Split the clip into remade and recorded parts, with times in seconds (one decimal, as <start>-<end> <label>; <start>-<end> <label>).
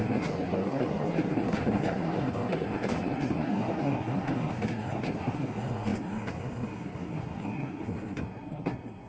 0.0-9.1 remade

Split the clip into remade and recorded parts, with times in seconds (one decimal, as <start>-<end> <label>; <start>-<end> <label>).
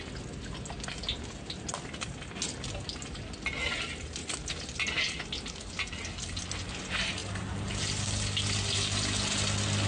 0.0-7.2 recorded; 7.2-7.8 remade; 7.8-9.9 recorded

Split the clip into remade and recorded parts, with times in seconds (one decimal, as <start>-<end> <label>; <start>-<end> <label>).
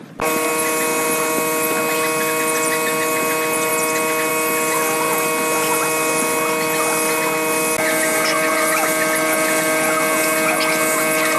0.0-11.4 recorded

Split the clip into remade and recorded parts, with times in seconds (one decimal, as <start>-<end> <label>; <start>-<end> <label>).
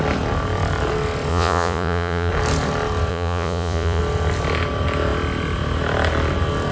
0.0-1.3 recorded; 1.3-2.3 remade; 2.3-3.1 recorded; 3.1-4.0 remade; 4.0-6.7 recorded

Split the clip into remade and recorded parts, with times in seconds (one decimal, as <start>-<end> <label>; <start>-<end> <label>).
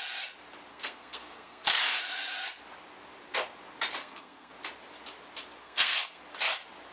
0.0-0.7 recorded; 0.7-1.8 remade; 1.8-4.0 recorded; 4.0-4.5 remade; 4.5-5.6 recorded; 5.6-6.2 remade; 6.2-6.9 recorded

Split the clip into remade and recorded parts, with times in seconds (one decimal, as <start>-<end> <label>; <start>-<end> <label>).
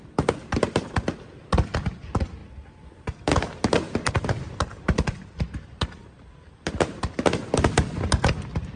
0.0-8.8 remade